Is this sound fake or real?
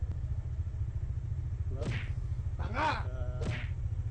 real